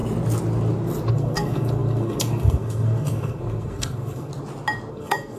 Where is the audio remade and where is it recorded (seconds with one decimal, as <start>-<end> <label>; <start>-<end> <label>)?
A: 0.0-1.1 recorded; 1.1-4.3 remade; 4.3-4.9 recorded; 4.9-5.4 remade